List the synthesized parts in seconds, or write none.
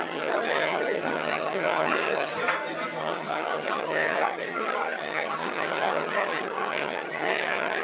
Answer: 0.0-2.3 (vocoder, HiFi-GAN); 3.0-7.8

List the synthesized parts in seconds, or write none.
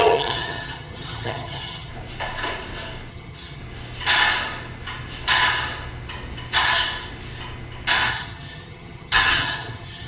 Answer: 0.0-1.9 (vocoder, HiFi-GAN); 3.1-3.6; 8.1-10.1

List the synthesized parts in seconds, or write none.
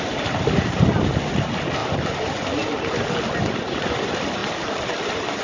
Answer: none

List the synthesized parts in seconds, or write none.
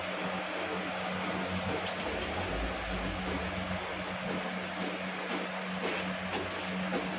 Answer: none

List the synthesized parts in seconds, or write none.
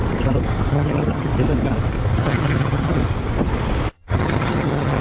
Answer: 0.7-1.3 (vocoder, HiFi-GAN); 2.2-3.0; 3.9-5.0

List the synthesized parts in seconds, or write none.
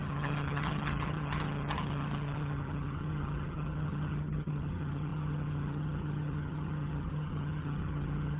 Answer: 0.0-8.4 (vocoder, HiFi-GAN)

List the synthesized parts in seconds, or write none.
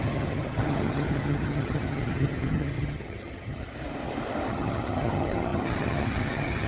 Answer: 0.0-3.6 (vocoder, HiFi-GAN); 4.5-6.7